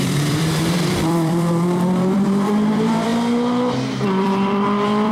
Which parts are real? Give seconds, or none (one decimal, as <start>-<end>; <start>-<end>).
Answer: 3.1-4.2